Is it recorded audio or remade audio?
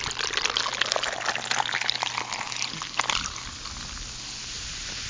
recorded